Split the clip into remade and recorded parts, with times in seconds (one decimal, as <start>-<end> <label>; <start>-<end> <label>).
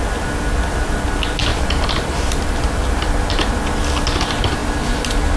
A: 0.0-1.5 recorded; 1.5-3.5 remade; 3.5-5.4 recorded